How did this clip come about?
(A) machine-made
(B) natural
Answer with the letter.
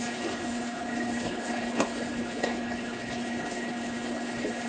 A